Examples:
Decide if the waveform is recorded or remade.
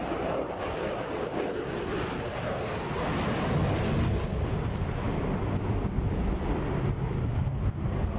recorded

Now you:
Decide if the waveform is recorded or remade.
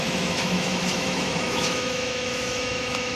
remade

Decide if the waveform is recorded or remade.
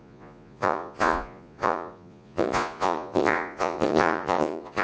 remade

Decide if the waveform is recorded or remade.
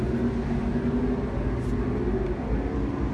recorded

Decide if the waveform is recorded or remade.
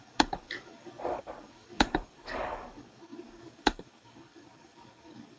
remade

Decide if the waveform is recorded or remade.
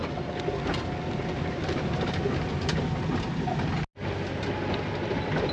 recorded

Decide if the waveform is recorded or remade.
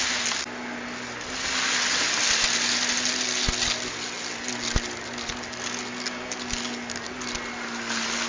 recorded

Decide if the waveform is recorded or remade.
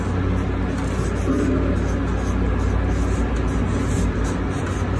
recorded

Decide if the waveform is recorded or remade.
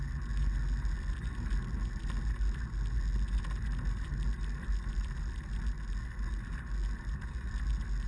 recorded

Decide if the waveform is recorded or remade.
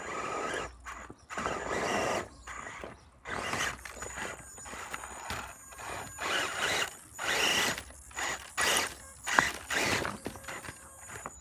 recorded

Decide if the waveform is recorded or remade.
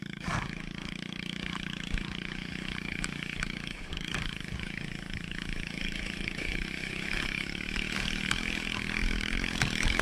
remade